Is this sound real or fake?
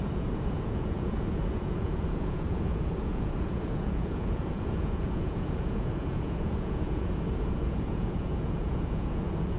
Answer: fake